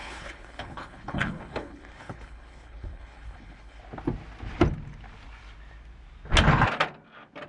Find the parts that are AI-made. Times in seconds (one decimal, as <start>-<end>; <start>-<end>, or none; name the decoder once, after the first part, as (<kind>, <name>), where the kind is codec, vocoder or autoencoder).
0.0-3.8 (codec, HILCodec)